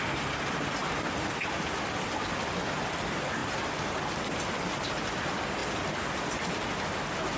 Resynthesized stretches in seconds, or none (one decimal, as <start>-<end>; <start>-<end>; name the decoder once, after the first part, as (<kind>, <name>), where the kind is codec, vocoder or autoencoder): none